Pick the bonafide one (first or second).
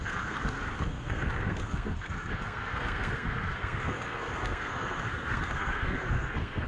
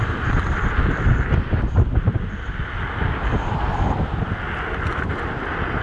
second